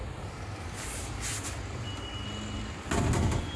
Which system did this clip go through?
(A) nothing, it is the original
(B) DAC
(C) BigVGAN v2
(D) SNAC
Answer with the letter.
A